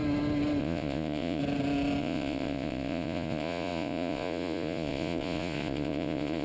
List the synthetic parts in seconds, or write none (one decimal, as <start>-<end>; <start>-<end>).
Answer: 0.6-1.4; 2.0-6.4